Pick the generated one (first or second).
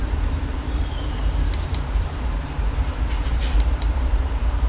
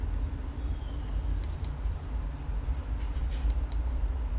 first